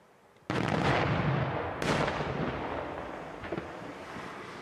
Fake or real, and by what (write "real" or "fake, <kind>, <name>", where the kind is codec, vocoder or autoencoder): real